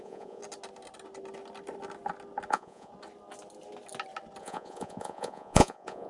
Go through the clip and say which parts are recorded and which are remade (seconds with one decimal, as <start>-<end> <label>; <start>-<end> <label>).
0.0-0.4 remade; 0.4-2.5 recorded; 2.5-2.9 remade; 2.9-4.4 recorded; 4.4-6.1 remade